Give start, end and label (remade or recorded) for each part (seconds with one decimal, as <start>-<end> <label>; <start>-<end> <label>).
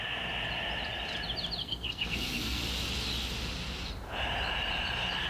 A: 0.0-1.6 recorded; 1.6-2.6 remade; 2.6-5.3 recorded